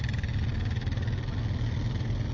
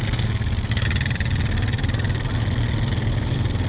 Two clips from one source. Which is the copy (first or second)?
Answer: second